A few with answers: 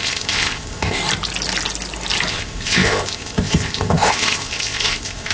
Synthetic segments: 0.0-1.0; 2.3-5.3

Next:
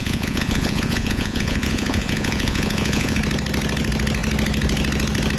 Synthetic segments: 0.0-3.2

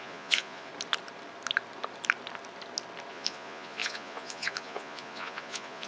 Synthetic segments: 0.0-0.7; 3.1-5.9

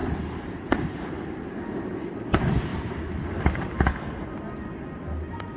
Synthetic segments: 0.0-1.2

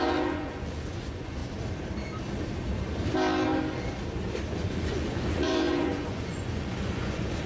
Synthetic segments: 0.0-1.4; 4.5-7.5

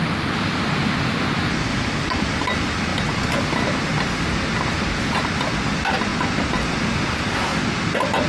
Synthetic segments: none